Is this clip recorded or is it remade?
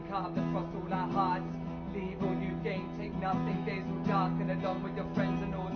recorded